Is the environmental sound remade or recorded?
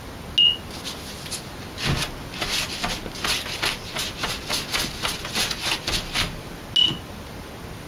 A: recorded